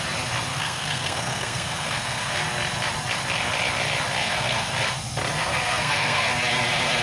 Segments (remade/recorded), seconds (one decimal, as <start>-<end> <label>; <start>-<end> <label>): 0.0-0.5 recorded; 0.5-2.4 remade; 2.4-4.2 recorded; 4.2-4.7 remade; 4.7-5.4 recorded; 5.4-6.3 remade; 6.3-7.0 recorded